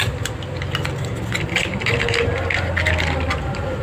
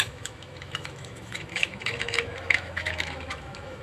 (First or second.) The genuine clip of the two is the first